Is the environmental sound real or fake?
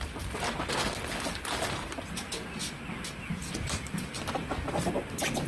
real